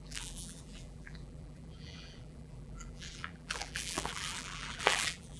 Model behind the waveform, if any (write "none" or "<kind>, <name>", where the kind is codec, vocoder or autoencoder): vocoder, BigVGAN v2